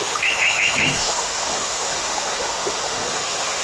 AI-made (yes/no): yes